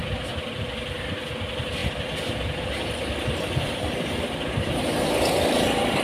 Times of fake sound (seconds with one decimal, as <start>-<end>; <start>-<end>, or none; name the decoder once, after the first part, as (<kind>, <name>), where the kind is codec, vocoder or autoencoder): 0.7-6.0 (vocoder, BigVGAN v2)